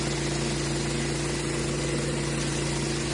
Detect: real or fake real